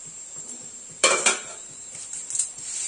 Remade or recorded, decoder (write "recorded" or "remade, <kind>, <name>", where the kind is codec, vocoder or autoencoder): remade, vocoder, BigVGAN v2